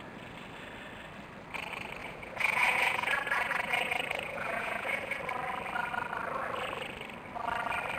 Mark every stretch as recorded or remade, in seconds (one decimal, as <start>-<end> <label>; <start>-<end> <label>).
0.0-2.0 recorded; 2.0-5.2 remade; 5.2-8.0 recorded